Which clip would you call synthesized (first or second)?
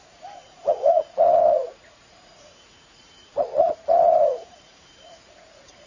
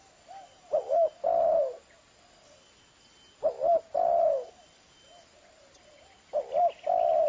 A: first